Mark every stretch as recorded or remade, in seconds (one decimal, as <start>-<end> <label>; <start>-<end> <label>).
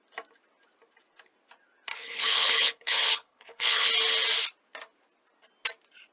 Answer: 0.0-1.9 recorded; 1.9-3.9 remade; 3.9-6.1 recorded